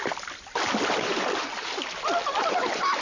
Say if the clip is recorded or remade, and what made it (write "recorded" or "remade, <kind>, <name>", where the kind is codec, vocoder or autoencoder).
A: remade, vocoder, BigVGAN v2